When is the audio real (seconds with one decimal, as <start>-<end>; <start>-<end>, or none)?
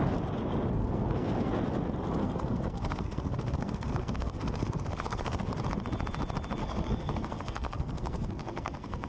0.0-0.8; 1.5-2.2; 5.5-6.6